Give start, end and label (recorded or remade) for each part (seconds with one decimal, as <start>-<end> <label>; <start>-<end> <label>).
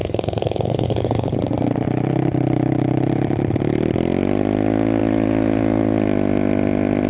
0.0-1.4 remade; 1.4-7.1 recorded